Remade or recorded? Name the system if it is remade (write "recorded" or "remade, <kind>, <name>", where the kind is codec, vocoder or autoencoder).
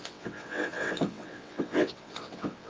remade, vocoder, WaveNeXt